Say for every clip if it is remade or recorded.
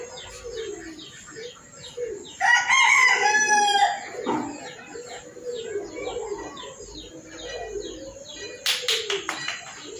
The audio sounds recorded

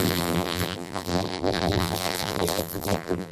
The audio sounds remade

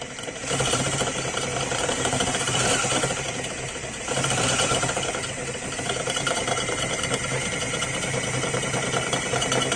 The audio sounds remade